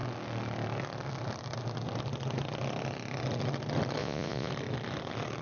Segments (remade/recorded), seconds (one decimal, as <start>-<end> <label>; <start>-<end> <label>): 0.0-4.0 recorded; 4.0-4.5 remade; 4.5-5.4 recorded